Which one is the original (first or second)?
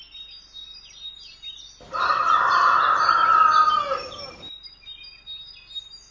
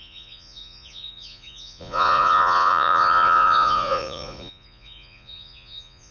first